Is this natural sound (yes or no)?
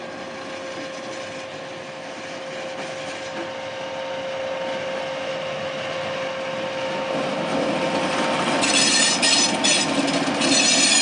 yes